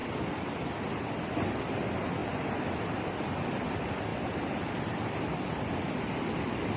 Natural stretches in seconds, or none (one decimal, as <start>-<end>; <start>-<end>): 0.8-4.1; 6.0-6.8